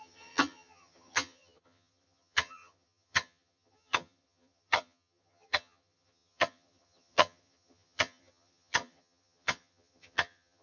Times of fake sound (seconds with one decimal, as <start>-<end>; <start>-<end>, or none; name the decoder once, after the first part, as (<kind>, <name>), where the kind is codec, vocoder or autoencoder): 0.0-10.6 (vocoder, HiFi-GAN)